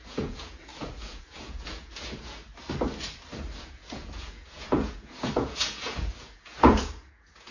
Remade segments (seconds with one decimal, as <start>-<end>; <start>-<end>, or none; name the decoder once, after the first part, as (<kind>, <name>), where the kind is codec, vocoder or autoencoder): 0.0-2.5 (vocoder, Vocos); 3.6-7.5